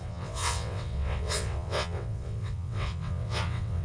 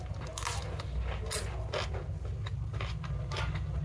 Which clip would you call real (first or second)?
second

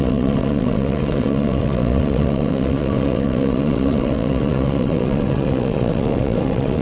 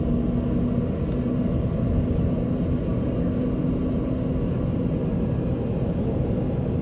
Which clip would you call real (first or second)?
second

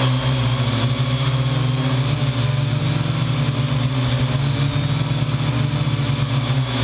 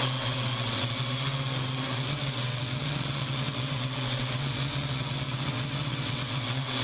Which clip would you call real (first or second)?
first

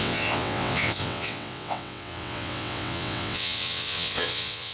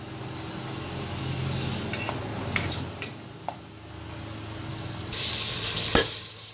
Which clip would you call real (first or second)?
second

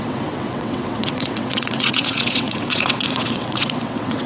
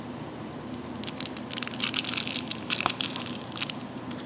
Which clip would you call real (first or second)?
second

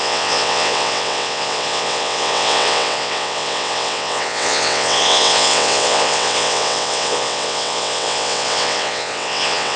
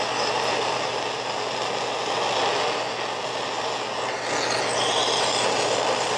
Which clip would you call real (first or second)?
second